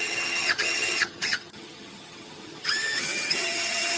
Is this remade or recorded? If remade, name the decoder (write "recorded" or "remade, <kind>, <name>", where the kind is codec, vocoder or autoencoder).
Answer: remade, vocoder, HiFi-GAN